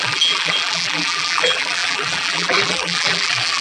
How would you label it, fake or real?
fake